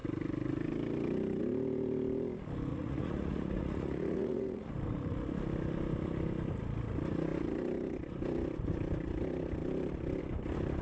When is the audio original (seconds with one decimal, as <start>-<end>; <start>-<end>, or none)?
0.0-2.7; 4.7-10.8

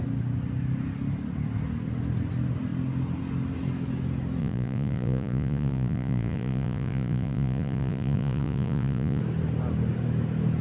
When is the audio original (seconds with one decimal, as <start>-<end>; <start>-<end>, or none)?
0.0-4.4; 9.2-10.6

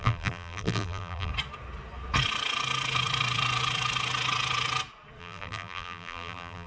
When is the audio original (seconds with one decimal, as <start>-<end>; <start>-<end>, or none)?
1.3-5.2

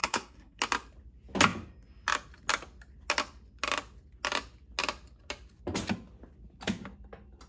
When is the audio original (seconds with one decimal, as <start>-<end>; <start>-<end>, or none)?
0.6-7.5

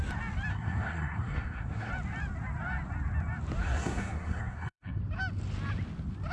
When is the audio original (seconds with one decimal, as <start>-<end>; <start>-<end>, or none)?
0.0-0.5; 1.9-3.6; 5.0-6.3

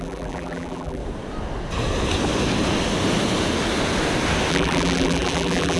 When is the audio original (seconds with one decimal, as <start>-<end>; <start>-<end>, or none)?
1.0-4.5

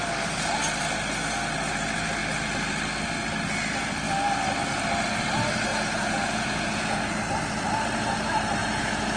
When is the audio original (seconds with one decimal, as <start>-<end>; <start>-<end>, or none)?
0.0-5.7; 7.2-8.6